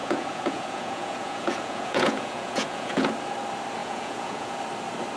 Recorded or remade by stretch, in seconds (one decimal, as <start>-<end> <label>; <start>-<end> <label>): 0.0-3.1 remade; 3.1-3.8 recorded; 3.8-4.6 remade; 4.6-5.2 recorded